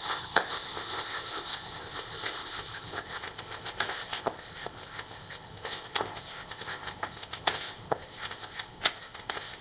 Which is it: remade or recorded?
remade